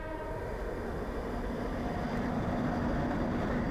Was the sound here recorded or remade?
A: recorded